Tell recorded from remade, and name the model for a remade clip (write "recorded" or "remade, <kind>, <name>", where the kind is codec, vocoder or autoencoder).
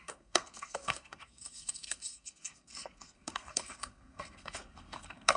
remade, codec, SNAC